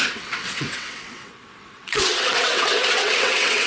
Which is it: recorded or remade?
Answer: remade